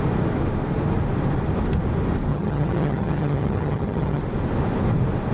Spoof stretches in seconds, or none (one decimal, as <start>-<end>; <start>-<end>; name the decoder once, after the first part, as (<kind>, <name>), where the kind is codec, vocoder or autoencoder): 2.3-4.2 (vocoder, HiFi-GAN)

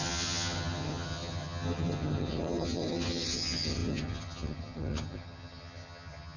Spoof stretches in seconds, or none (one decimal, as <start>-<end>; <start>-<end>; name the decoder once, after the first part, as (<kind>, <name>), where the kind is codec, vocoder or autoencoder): 0.0-6.4 (vocoder, HiFi-GAN)

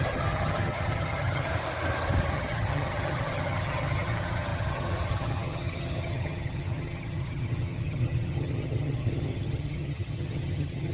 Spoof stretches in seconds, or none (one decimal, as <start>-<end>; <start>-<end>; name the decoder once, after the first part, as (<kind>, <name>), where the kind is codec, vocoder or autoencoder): 0.0-1.5 (vocoder, HiFi-GAN); 2.3-10.9

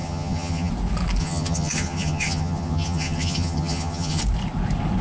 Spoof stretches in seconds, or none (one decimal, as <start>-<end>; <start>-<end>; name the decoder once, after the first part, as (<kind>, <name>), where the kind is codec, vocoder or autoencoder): 0.0-0.7 (vocoder, HiFi-GAN); 1.2-4.2

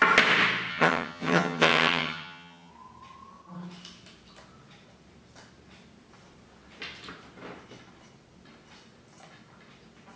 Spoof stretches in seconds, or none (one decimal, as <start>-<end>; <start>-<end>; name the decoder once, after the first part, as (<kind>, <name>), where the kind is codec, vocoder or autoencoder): 0.7-2.7 (vocoder, HiFi-GAN)